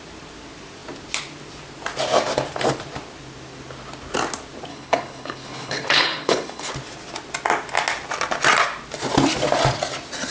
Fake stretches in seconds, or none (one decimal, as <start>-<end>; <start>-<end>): 4.7-6.7